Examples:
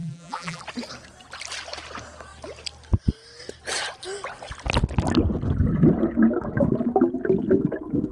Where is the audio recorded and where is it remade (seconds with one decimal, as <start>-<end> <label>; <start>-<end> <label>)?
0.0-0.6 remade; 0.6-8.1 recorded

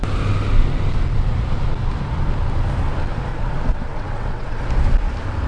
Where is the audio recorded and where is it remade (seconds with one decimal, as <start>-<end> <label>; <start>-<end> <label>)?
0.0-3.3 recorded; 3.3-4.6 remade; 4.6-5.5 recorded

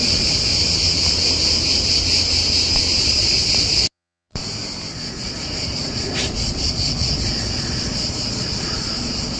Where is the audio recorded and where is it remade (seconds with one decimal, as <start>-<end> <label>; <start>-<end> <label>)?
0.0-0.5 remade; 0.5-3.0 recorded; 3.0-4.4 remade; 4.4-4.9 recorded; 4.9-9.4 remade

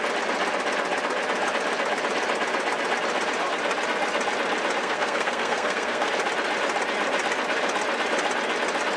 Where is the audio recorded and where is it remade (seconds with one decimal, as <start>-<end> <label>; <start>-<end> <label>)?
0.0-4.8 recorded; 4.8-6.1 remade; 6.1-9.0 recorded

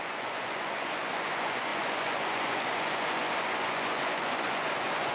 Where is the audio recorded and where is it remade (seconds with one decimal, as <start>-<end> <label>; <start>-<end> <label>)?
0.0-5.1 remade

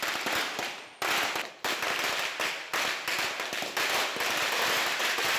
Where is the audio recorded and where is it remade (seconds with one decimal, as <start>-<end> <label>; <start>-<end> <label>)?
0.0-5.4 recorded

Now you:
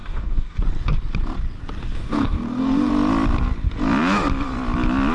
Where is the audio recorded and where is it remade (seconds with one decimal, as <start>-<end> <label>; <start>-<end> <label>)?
0.0-0.6 remade; 0.6-1.8 recorded; 1.8-2.9 remade; 2.9-5.1 recorded

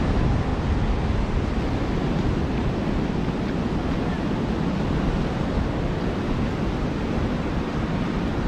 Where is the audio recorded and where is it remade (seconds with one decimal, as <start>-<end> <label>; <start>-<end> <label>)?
0.0-8.5 recorded